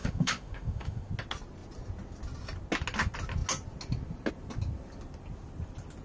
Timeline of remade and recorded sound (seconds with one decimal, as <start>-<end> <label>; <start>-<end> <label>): 0.0-1.1 remade; 1.1-6.0 recorded